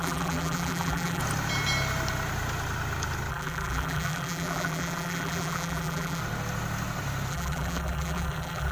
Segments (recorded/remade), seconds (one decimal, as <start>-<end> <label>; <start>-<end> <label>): 0.0-1.2 remade; 1.2-3.3 recorded; 3.3-6.2 remade; 6.2-7.3 recorded; 7.3-8.7 remade